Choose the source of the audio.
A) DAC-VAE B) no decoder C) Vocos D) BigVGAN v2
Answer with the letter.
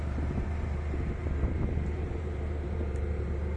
D